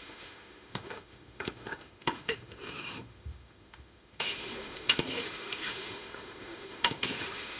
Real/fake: fake